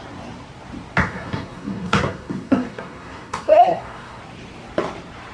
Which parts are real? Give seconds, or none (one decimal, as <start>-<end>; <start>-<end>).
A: 0.0-1.0; 4.2-5.3